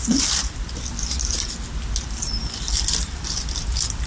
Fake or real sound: real